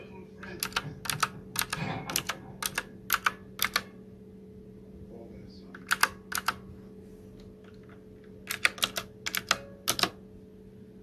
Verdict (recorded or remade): recorded